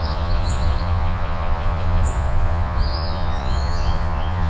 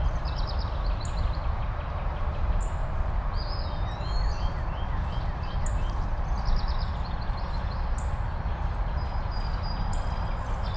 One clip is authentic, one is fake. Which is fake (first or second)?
first